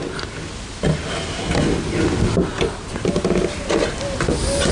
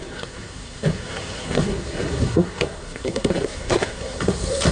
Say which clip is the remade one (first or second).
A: second